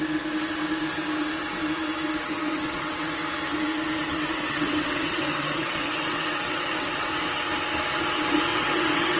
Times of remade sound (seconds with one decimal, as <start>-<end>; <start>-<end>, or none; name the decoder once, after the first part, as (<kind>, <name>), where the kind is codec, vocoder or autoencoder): 2.5-3.2 (vocoder, WaveNeXt); 4.1-7.2; 8.5-9.2